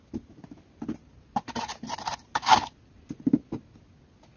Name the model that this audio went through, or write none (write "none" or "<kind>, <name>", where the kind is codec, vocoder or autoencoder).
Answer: none